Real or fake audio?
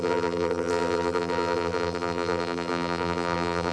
fake